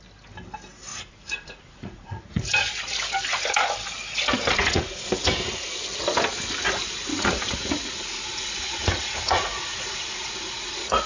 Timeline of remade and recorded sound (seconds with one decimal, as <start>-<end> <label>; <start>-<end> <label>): 0.0-0.9 recorded; 0.9-2.5 remade; 2.5-4.6 recorded; 4.6-5.1 remade; 5.1-7.1 recorded; 7.1-11.1 remade